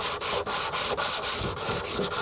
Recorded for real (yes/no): yes